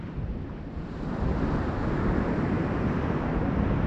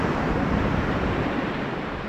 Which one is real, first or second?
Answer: first